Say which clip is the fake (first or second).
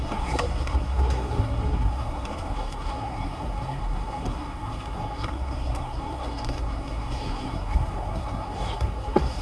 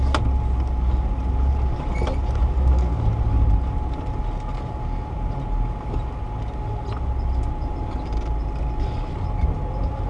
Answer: first